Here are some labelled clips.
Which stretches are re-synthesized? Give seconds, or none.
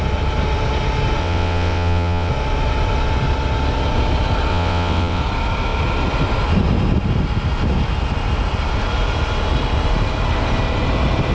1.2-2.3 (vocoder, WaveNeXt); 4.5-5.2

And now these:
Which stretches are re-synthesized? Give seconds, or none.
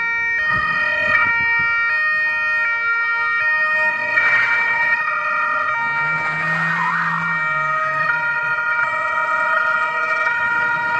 0.5-1.3 (vocoder, WaveNeXt); 3.9-5.7; 8.0-11.0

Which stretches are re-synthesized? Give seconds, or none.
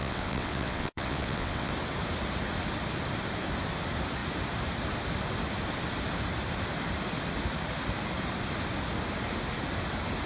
0.0-1.7 (vocoder, WaveNeXt)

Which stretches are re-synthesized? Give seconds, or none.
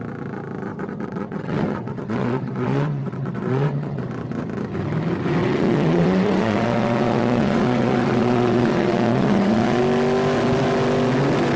0.7-4.0 (vocoder, WaveNeXt); 5.4-9.8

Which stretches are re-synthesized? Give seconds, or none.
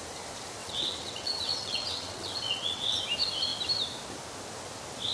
0.6-3.0 (vocoder, WaveNeXt)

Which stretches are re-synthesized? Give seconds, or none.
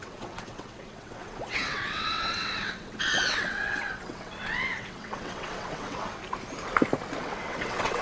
0.0-6.2 (vocoder, WaveNeXt); 7.2-8.0